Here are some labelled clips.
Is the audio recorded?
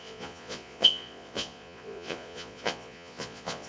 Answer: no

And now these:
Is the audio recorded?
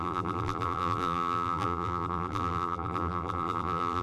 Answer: no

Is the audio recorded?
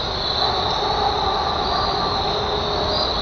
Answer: yes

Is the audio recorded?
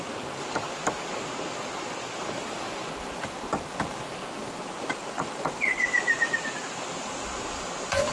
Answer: yes